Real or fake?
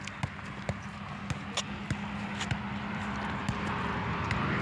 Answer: real